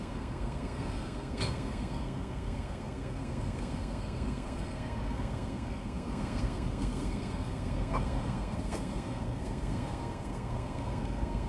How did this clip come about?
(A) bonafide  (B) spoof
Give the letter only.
B